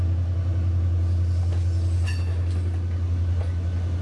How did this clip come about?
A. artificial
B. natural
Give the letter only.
B